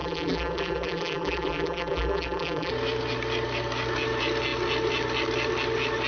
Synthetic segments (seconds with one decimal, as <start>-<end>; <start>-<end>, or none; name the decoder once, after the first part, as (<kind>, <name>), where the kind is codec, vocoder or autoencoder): 0.0-2.7 (vocoder, BigVGAN v2)